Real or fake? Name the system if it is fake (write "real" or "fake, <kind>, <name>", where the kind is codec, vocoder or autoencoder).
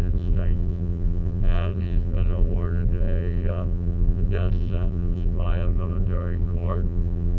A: fake, vocoder, BigVGAN v2